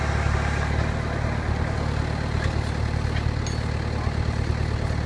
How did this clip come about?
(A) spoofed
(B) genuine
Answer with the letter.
B